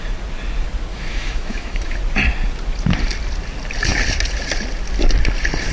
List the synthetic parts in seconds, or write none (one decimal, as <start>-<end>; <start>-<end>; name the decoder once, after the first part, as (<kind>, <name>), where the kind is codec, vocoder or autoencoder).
0.9-2.0 (autoencoder, DAC-VAE)